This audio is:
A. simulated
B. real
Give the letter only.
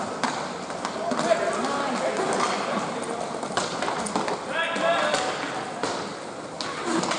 B